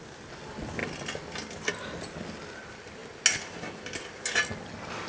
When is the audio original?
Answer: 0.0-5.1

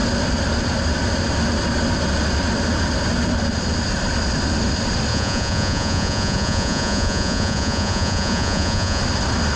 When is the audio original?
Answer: 0.0-5.1; 9.0-9.6

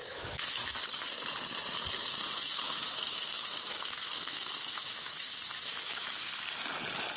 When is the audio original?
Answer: 0.8-2.0; 6.3-7.2

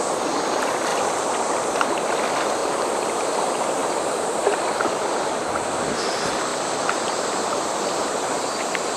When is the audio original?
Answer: 0.0-2.6; 3.4-3.8; 5.5-6.5; 8.1-9.0

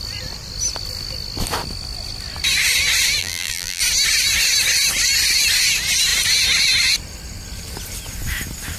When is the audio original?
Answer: 0.0-3.2; 3.8-8.8